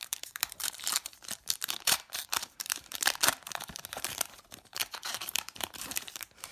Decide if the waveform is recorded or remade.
remade